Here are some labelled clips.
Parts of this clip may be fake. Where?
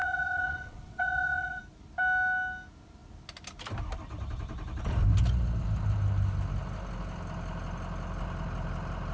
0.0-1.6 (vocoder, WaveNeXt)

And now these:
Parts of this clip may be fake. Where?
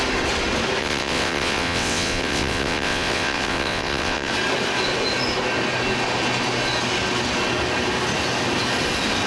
0.8-4.3 (vocoder, WaveNeXt)